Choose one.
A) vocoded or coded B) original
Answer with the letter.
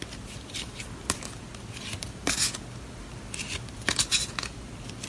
B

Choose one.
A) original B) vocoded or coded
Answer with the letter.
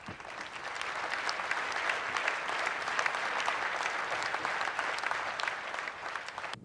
A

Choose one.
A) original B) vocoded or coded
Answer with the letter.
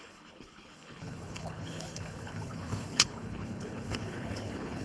B